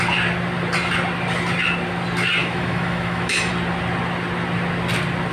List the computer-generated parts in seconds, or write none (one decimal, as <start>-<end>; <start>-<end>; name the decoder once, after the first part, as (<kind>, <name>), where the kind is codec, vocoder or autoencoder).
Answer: 2.4-3.5 (autoencoder, DAC-VAE)